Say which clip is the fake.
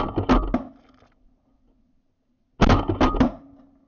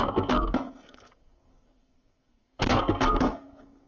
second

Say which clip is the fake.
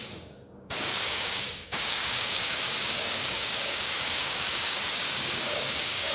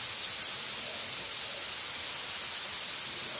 first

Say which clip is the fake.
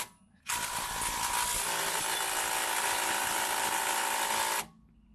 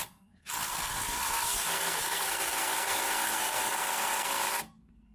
second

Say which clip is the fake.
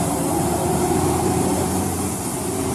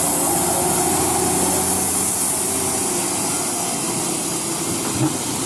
first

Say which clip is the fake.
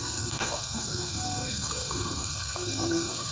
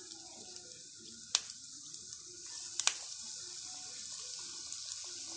first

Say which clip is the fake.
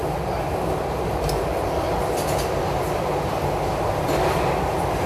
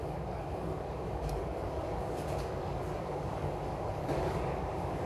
second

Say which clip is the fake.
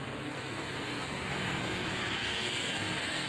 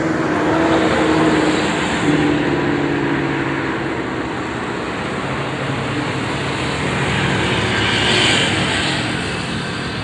first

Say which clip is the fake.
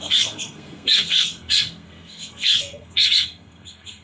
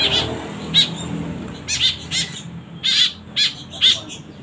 first